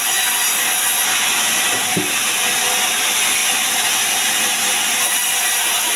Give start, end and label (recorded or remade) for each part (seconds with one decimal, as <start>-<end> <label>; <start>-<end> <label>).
0.0-6.0 recorded